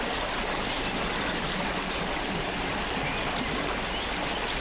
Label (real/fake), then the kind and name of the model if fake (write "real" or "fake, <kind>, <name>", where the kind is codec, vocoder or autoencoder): real